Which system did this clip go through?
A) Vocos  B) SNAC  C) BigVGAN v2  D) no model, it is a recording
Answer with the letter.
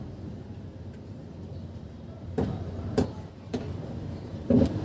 C